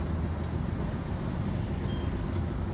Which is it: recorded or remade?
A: recorded